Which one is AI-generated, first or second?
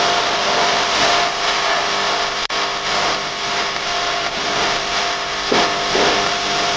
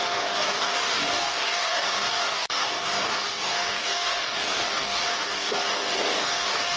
second